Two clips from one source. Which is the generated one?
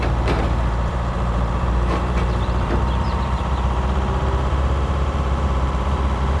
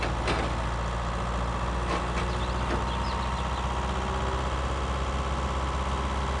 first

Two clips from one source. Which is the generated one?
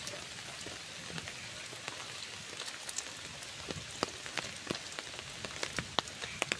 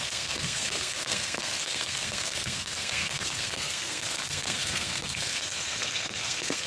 second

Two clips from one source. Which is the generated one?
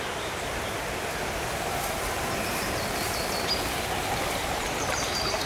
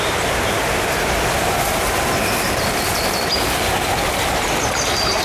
first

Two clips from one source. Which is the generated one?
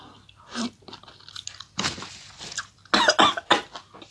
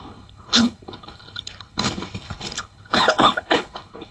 second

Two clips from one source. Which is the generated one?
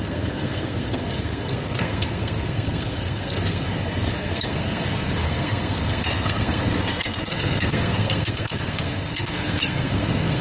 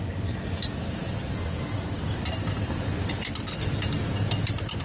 first